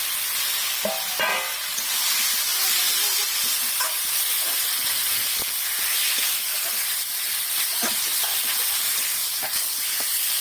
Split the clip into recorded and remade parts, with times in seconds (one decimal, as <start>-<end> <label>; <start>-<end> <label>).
0.0-6.5 recorded; 6.5-8.0 remade; 8.0-10.4 recorded